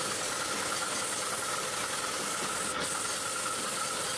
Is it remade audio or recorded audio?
recorded